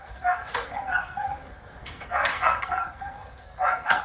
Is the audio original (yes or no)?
no